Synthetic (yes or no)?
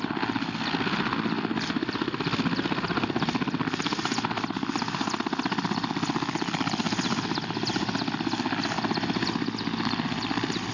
no